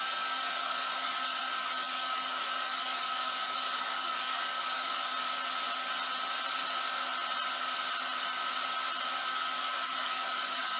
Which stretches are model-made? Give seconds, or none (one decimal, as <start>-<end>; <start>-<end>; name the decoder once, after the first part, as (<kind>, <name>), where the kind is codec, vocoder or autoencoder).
0.0-5.1 (codec, DAC); 9.2-10.8